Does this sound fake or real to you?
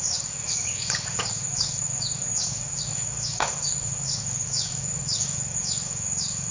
fake